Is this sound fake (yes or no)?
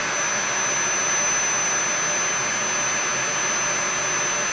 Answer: no